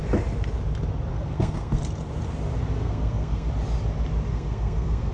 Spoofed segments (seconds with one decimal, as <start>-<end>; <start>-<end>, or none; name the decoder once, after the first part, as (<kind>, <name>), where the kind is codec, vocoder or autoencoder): 1.1-1.8 (codec, SNAC); 2.8-3.5; 4.3-5.1